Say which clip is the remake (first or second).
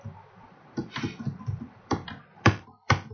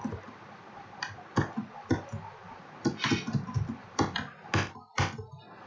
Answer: first